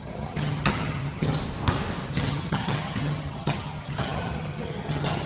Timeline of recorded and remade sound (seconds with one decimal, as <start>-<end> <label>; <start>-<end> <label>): 0.0-1.3 remade; 1.3-2.1 recorded; 2.1-5.3 remade